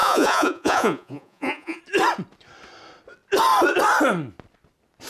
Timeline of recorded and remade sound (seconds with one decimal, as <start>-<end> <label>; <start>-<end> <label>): 0.0-1.8 remade; 1.8-5.1 recorded